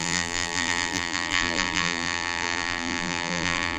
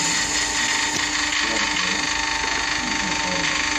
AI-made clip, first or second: first